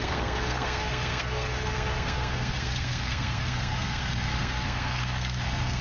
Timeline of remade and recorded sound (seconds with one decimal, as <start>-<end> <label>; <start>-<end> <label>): 0.0-5.8 remade